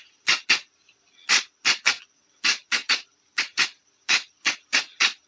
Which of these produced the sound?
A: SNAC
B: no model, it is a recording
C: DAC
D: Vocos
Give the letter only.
D